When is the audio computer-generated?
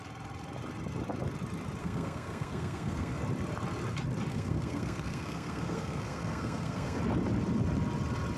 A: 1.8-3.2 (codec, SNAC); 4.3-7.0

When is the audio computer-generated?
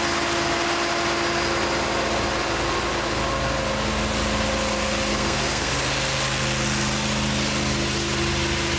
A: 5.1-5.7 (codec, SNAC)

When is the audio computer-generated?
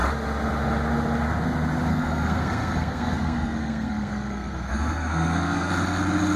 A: 1.9-5.7 (codec, SNAC)